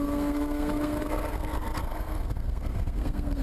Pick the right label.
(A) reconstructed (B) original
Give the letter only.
A